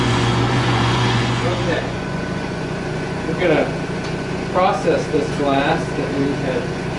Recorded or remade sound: remade